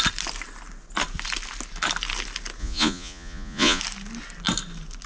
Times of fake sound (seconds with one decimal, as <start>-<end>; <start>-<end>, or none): 2.6-3.8